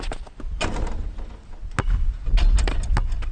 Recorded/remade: recorded